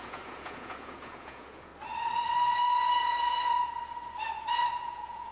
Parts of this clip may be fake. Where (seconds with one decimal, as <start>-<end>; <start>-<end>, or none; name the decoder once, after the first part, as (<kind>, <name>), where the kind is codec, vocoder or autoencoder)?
0.0-1.7 (vocoder, Vocos); 4.7-5.3